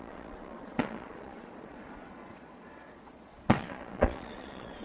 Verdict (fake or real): fake